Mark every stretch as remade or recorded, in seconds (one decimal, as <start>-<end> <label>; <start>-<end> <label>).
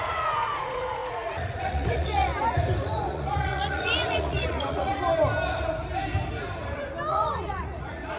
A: 0.0-2.3 remade; 2.3-2.8 recorded; 2.8-4.9 remade; 4.9-7.1 recorded; 7.1-8.2 remade